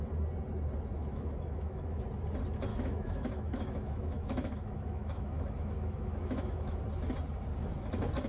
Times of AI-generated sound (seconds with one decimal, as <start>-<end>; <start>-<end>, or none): 1.0-2.0; 2.7-6.8